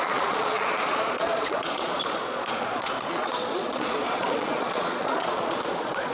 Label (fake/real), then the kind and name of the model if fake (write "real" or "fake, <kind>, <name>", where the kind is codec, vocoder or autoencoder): fake, vocoder, Vocos